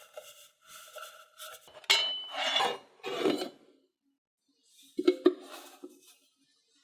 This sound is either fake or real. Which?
real